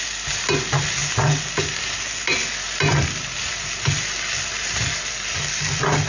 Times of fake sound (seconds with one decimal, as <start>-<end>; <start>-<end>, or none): none